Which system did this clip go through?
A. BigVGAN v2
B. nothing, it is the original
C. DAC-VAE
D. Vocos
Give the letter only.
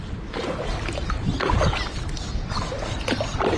B